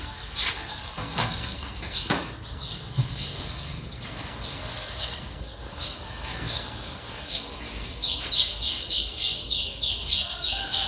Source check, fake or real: fake